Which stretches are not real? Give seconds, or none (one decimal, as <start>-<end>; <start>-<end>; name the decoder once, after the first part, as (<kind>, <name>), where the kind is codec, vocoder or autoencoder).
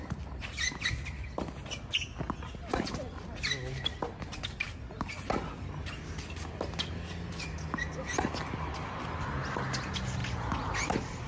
none